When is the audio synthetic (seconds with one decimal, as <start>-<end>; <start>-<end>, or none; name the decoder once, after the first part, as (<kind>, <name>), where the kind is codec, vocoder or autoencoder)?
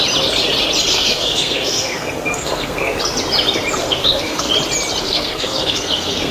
0.9-3.0 (codec, SNAC); 3.8-4.5; 5.0-6.3